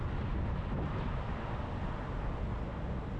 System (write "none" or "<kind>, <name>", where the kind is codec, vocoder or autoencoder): none